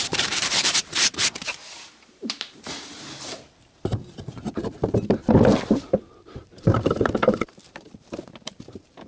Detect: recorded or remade remade